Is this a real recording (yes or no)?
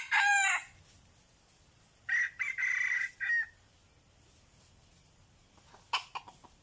yes